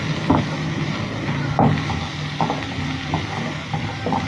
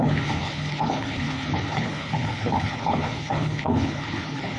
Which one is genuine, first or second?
first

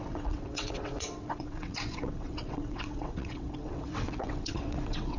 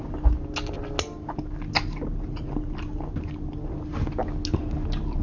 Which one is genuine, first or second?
second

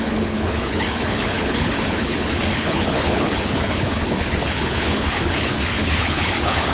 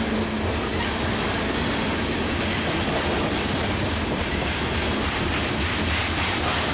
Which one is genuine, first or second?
second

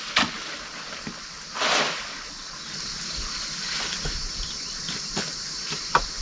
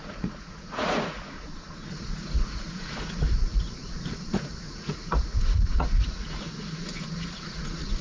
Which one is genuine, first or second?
first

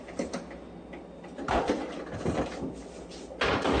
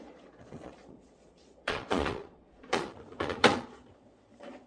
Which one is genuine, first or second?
first